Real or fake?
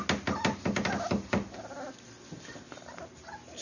real